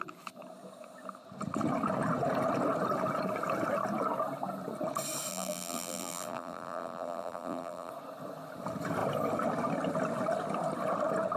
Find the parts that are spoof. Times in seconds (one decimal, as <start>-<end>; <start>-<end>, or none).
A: 5.3-7.9